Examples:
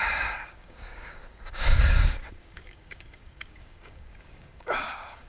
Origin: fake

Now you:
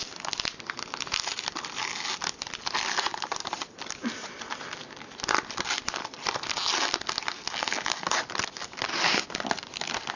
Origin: real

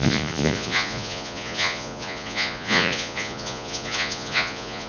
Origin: fake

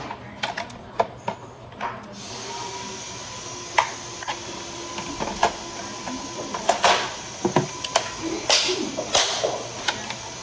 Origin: real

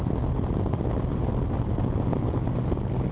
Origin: real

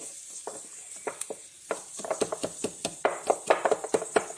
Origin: real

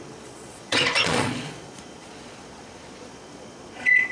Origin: fake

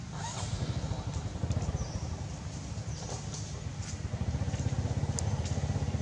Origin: real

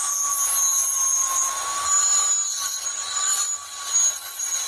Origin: real